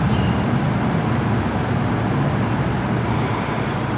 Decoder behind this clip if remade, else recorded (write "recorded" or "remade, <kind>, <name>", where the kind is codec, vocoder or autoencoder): recorded